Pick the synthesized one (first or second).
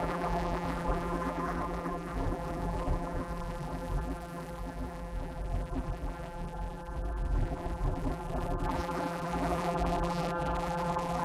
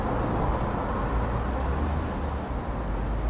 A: first